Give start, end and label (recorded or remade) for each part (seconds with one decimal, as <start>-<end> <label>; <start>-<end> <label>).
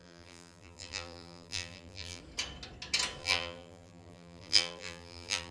0.0-2.2 remade; 2.2-3.2 recorded; 3.2-5.5 remade